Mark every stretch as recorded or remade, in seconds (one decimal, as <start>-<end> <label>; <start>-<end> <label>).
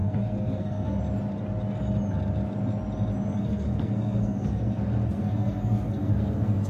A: 0.0-1.0 remade; 1.0-3.3 recorded; 3.3-6.7 remade